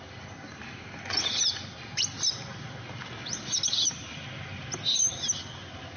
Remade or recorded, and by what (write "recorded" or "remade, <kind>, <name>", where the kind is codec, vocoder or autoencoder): recorded